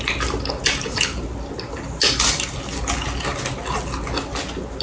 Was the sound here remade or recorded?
recorded